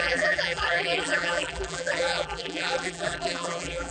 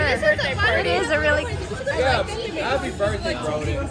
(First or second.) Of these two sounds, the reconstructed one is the first